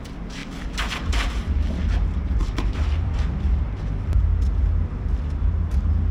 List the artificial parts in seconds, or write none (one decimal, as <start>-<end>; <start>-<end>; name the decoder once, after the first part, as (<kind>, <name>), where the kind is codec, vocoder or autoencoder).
2.4-4.2 (vocoder, BigVGAN v2)